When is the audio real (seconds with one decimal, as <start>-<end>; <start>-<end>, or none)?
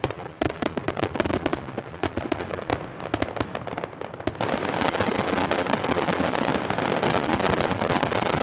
2.7-4.8; 6.5-7.1